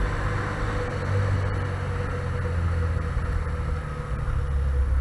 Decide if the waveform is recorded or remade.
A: recorded